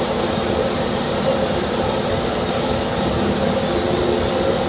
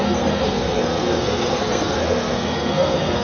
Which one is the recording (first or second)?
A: first